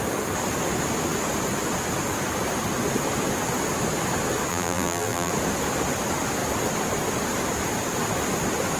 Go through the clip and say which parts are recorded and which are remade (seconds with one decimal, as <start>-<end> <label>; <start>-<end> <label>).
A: 0.0-4.5 recorded; 4.5-5.3 remade; 5.3-8.8 recorded